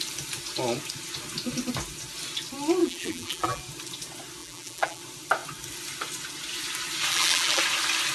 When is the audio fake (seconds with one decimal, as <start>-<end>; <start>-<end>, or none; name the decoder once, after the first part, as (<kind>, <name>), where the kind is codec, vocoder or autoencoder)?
2.8-3.6 (vocoder, BigVGAN v2); 4.4-5.0; 7.1-7.6